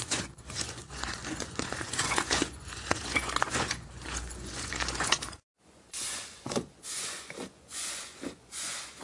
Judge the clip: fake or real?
fake